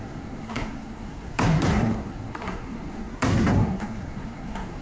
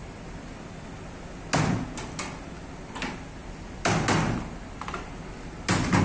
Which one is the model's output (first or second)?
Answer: first